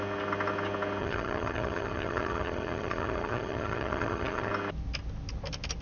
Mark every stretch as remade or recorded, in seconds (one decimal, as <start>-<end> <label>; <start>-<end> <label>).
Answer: 0.0-1.0 recorded; 1.0-4.5 remade; 4.5-5.8 recorded